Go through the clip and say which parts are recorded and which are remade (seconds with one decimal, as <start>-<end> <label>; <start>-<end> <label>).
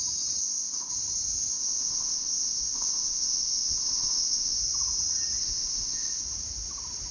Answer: 0.0-0.4 recorded; 0.4-0.9 remade; 0.9-1.5 recorded; 1.5-4.6 remade; 4.6-5.4 recorded; 5.4-6.2 remade; 6.2-7.1 recorded